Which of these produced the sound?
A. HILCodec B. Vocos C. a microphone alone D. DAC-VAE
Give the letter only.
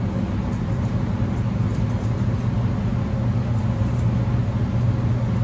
C